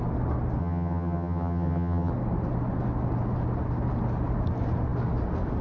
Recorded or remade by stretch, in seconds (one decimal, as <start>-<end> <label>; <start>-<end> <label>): 0.0-0.6 recorded; 0.6-2.1 remade; 2.1-5.6 recorded

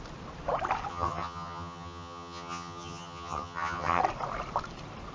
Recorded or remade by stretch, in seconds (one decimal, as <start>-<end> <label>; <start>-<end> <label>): 0.0-0.9 recorded; 0.9-4.0 remade; 4.0-5.1 recorded

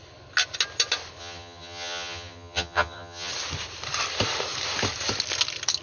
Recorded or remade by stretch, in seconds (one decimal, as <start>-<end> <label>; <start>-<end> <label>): 0.0-1.2 recorded; 1.2-3.3 remade; 3.3-5.8 recorded

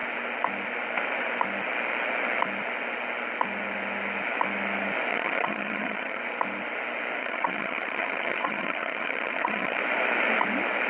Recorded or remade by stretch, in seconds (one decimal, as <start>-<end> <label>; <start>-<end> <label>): 0.0-5.1 recorded; 5.1-6.2 remade; 6.2-7.2 recorded; 7.2-9.8 remade; 9.8-10.9 recorded

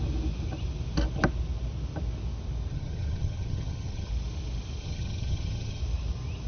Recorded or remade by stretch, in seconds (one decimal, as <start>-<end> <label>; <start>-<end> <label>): 0.0-2.7 recorded; 2.7-4.1 remade; 4.1-4.8 recorded; 4.8-5.8 remade; 5.8-6.5 recorded

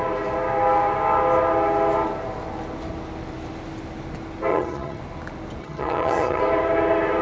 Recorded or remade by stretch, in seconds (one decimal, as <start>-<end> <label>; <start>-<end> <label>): 0.0-4.5 recorded; 4.5-5.0 remade; 5.0-5.6 recorded; 5.6-6.4 remade; 6.4-7.2 recorded

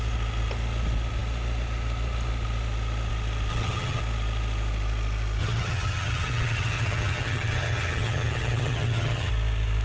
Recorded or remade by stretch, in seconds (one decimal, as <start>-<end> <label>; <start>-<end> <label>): 0.0-3.5 recorded; 3.5-4.0 remade; 4.0-5.4 recorded; 5.4-9.3 remade; 9.3-9.8 recorded

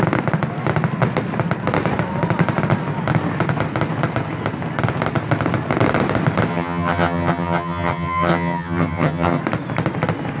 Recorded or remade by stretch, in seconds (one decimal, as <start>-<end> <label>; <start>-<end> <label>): 0.0-6.5 recorded; 6.5-9.4 remade; 9.4-10.4 recorded